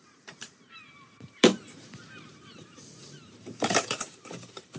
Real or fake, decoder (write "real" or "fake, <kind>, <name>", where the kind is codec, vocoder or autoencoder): fake, vocoder, BigVGAN v2